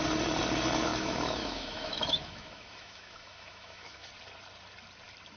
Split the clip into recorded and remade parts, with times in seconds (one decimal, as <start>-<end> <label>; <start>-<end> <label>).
0.0-0.9 recorded; 0.9-4.1 remade; 4.1-5.4 recorded